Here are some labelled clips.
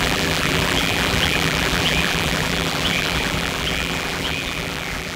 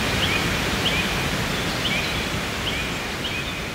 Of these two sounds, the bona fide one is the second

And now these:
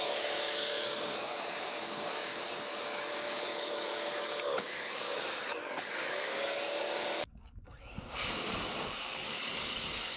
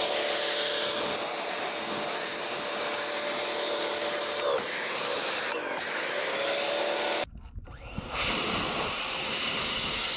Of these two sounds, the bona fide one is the second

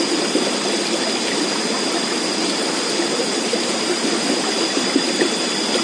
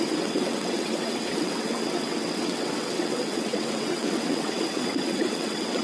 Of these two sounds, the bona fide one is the first